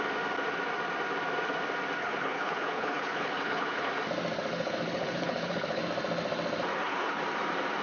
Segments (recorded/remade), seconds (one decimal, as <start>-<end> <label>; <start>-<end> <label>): 0.0-2.0 recorded; 2.0-3.9 remade; 3.9-4.5 recorded; 4.5-5.8 remade; 5.8-6.7 recorded; 6.7-7.2 remade; 7.2-7.8 recorded